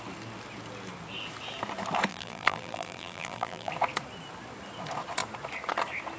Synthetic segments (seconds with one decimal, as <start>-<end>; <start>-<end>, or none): 2.1-3.7